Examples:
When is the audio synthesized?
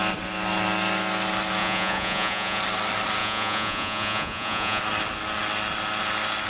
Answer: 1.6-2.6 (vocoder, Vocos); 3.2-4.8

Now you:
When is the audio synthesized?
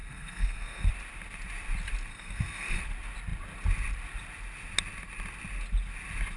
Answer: 0.0-0.9 (codec, SNAC); 2.1-2.8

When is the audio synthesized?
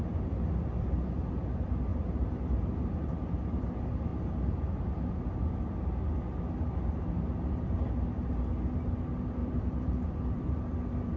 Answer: 1.9-2.6 (vocoder, BigVGAN v2); 9.4-11.2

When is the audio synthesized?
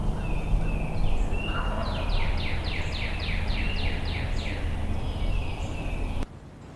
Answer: 1.8-2.4 (vocoder, BigVGAN v2)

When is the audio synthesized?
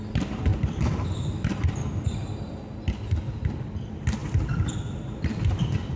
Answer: none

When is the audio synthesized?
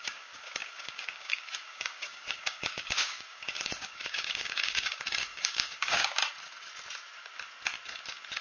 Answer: 0.0-6.2 (codec, DAC)